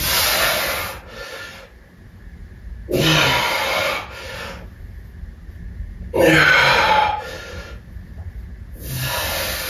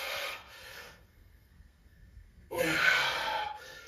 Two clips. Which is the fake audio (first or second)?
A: second